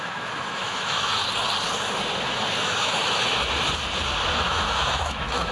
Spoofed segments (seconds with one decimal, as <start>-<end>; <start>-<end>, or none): 0.0-1.2; 2.6-3.3; 4.3-5.5